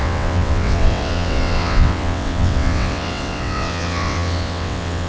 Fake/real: fake